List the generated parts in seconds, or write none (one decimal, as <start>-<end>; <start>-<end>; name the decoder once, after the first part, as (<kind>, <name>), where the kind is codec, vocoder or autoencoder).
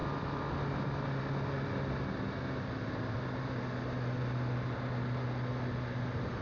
none